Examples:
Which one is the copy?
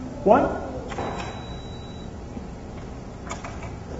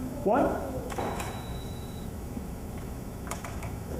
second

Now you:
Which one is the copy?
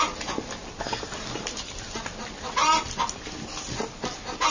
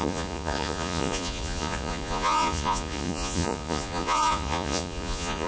second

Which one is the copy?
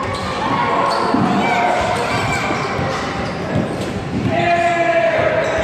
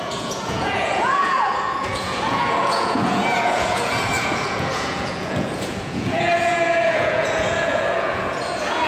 second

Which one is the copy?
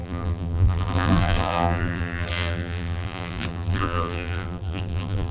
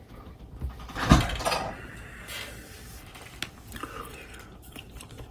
first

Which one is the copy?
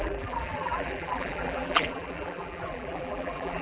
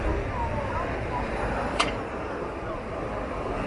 first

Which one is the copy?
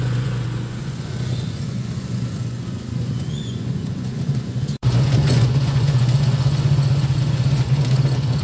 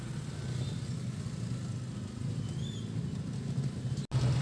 first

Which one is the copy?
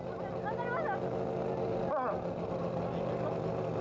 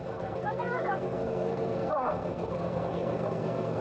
second